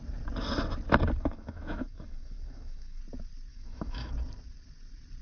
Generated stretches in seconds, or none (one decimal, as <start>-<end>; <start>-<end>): 1.2-3.0; 3.5-4.1